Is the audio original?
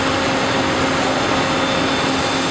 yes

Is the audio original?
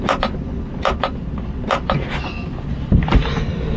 yes